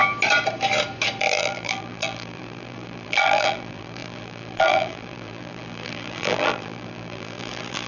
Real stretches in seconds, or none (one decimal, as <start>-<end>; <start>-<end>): 0.0-1.2